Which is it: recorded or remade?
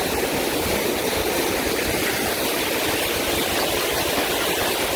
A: recorded